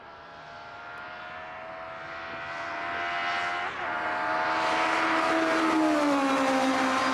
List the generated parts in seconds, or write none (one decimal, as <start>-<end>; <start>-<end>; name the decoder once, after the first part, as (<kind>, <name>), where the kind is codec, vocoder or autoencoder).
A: none